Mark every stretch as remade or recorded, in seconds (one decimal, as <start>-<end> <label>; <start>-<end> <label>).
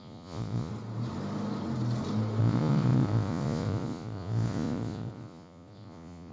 0.0-0.7 remade; 0.7-2.4 recorded; 2.4-6.3 remade